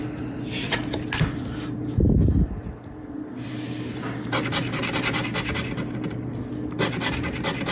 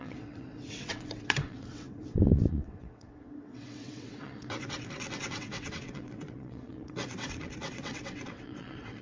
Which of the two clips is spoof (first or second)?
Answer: second